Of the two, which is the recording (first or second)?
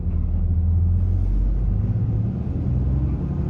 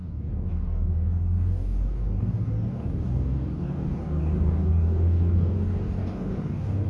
first